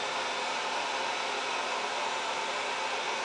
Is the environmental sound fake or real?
real